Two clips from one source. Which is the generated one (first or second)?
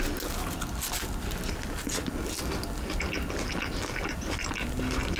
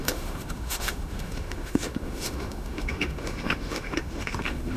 second